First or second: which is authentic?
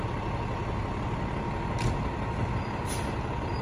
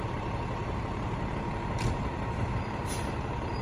first